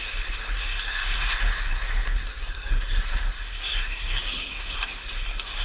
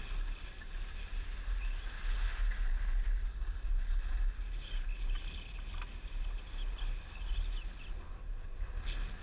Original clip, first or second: second